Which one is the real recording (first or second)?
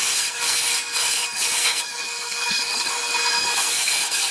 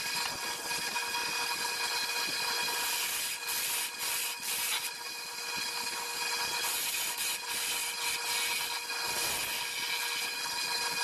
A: second